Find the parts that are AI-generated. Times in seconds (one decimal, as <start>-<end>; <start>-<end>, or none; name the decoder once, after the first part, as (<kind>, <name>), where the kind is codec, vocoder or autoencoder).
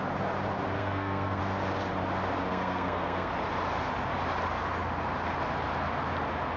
0.8-1.4 (codec, SNAC); 2.5-3.3